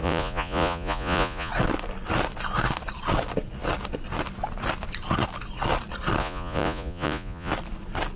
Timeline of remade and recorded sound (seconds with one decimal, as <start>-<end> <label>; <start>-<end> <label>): 0.0-1.5 remade; 1.5-6.2 recorded; 6.2-7.5 remade; 7.5-8.2 recorded